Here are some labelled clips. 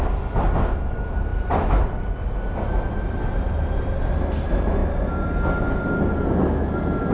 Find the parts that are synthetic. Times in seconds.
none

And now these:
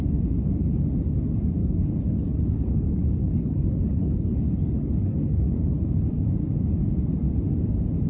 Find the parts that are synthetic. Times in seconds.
1.6-5.7 (codec, HILCodec)

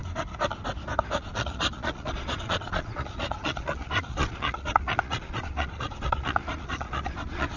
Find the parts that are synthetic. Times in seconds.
1.2-7.6 (vocoder, Vocos)

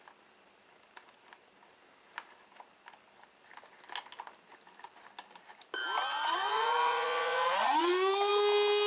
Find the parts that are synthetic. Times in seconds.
6.1-8.3 (vocoder, Vocos)

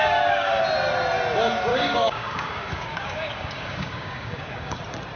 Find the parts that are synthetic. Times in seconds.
0.0-0.6 (codec, DAC); 1.7-4.8

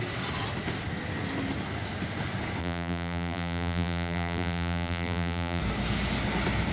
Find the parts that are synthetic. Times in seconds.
2.6-5.6 (vocoder, BigVGAN v2)

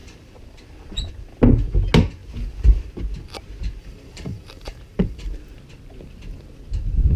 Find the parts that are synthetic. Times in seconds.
3.8-5.3 (vocoder, BigVGAN v2)

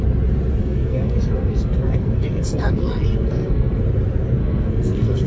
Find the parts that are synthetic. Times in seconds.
0.6-3.8 (codec, SNAC); 4.4-5.3